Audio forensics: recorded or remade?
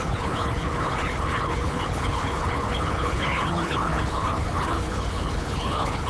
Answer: remade